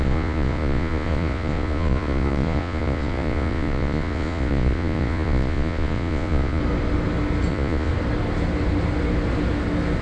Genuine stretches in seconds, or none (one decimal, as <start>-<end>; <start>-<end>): 6.6-7.5; 7.9-10.0